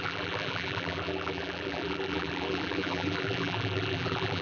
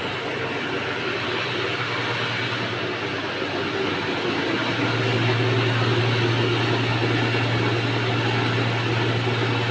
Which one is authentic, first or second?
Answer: second